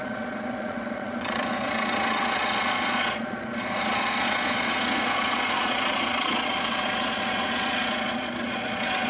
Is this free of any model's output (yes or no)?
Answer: no